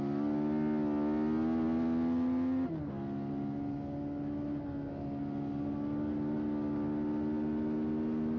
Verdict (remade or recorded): recorded